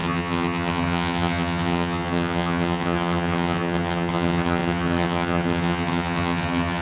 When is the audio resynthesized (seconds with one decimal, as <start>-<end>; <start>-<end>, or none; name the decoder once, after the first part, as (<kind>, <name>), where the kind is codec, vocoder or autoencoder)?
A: 0.0-6.8 (vocoder, HiFi-GAN)

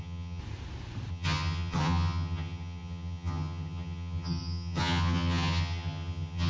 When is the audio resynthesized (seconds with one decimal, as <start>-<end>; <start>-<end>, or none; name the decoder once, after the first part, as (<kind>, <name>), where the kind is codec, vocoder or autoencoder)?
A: 0.0-0.4 (vocoder, HiFi-GAN); 1.1-6.5

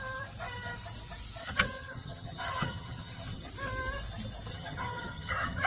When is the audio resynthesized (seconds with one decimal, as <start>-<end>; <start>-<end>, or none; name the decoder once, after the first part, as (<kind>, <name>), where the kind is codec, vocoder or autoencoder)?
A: 1.4-3.5 (vocoder, HiFi-GAN); 4.5-5.7

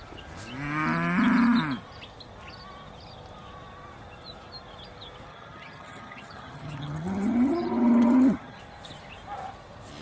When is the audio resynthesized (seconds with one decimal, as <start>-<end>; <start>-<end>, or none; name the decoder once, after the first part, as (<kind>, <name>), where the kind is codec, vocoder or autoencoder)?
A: 5.3-8.6 (vocoder, HiFi-GAN)